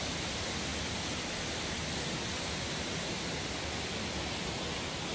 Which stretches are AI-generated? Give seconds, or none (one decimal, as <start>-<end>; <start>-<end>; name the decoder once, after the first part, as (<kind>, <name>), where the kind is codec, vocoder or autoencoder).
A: none